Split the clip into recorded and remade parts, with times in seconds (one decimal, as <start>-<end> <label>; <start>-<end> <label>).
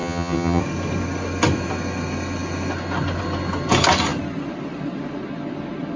0.0-0.6 remade; 0.6-6.0 recorded